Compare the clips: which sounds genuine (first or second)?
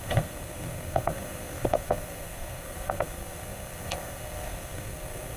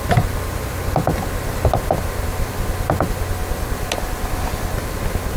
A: second